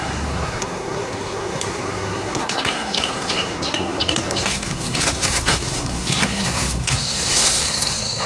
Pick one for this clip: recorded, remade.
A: remade